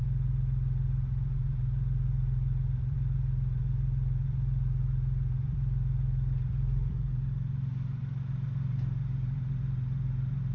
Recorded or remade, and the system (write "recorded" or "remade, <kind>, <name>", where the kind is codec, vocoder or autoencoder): remade, vocoder, BigVGAN v2